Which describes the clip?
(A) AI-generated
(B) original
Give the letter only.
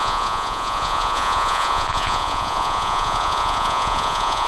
A